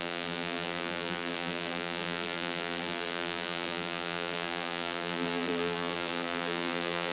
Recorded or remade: remade